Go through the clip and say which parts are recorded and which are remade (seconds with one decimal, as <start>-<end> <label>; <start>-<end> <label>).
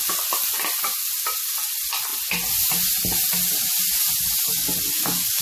0.0-5.4 recorded